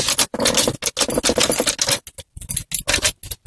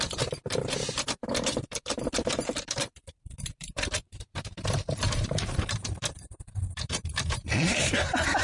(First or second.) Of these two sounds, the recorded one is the first